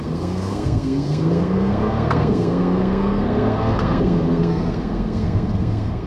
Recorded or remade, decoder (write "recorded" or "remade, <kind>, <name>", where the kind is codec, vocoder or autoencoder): remade, codec, SNAC